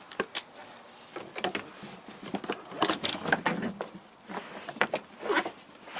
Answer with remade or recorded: recorded